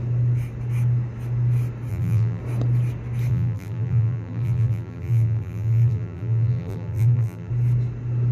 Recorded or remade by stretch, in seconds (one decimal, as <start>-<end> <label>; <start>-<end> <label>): 0.0-1.9 recorded; 1.9-2.4 remade; 2.4-3.3 recorded; 3.3-7.5 remade; 7.5-8.3 recorded